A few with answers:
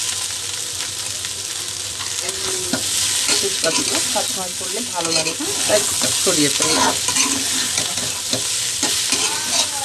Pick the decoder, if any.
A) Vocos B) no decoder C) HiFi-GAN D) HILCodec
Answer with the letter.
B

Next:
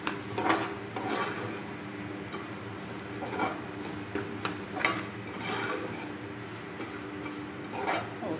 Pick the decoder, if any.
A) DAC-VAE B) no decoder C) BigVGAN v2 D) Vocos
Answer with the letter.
B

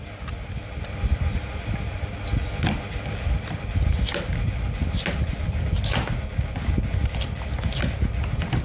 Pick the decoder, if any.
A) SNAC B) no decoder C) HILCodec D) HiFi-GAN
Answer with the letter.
B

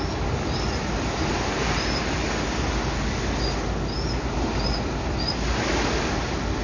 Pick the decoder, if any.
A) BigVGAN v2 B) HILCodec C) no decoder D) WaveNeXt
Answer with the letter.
C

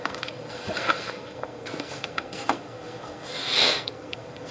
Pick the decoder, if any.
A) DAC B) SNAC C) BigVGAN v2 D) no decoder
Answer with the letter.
B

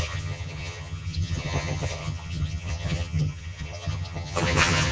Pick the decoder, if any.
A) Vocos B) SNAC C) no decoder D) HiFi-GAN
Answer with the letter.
D